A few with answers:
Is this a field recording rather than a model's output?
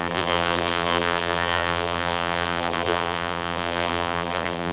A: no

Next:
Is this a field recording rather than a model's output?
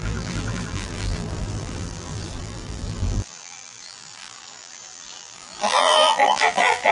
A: no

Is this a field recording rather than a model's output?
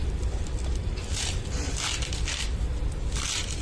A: no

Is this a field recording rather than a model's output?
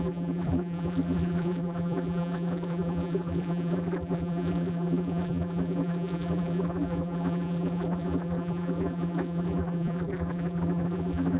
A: no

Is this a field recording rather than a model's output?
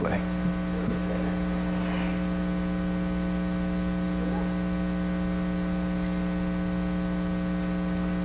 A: yes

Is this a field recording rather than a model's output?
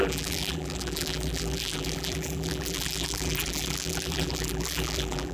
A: no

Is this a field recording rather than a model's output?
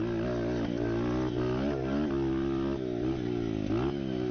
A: yes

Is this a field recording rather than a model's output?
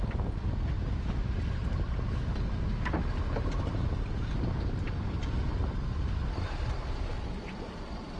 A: yes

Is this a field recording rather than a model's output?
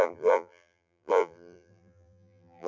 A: no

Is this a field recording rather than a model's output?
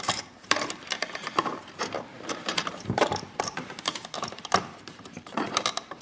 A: no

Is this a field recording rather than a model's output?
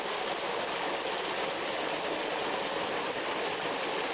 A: yes